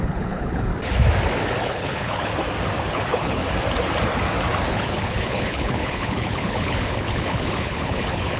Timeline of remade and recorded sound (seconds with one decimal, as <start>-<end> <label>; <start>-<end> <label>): 0.0-0.7 remade; 0.7-1.6 recorded; 1.6-2.3 remade; 2.3-2.9 recorded; 2.9-3.4 remade; 3.4-4.7 recorded; 4.7-8.4 remade